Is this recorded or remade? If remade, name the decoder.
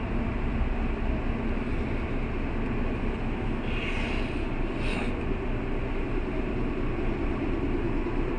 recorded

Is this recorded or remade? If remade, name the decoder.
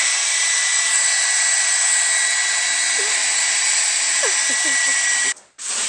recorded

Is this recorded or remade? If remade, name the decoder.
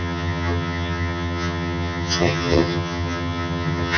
remade, vocoder, HiFi-GAN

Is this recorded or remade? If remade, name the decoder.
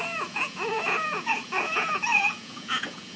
remade, vocoder, Vocos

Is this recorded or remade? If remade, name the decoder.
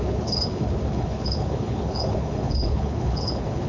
remade, codec, HILCodec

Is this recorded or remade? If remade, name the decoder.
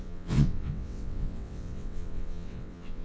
remade, vocoder, WaveNeXt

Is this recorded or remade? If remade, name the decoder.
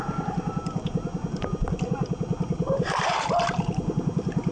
recorded